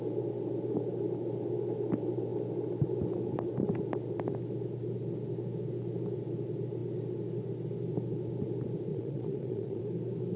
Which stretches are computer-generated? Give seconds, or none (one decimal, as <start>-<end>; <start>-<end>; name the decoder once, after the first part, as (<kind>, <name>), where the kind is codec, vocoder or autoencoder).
8.9-9.8 (vocoder, Vocos)